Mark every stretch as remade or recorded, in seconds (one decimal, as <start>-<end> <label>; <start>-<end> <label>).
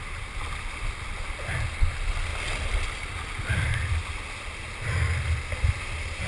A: 0.0-6.3 recorded